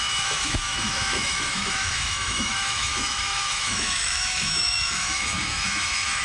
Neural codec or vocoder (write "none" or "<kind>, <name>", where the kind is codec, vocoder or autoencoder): autoencoder, DAC-VAE